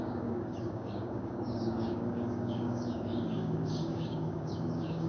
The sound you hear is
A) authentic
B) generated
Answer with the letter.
B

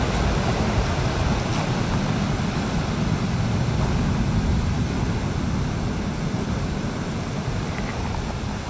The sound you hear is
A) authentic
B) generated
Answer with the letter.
A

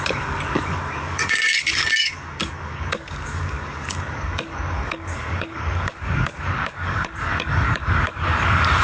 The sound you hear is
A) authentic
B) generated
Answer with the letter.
B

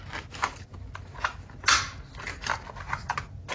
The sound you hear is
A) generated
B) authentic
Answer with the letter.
B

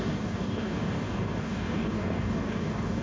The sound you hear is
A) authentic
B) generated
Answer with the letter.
B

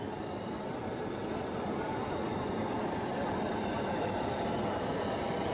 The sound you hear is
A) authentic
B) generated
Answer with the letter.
A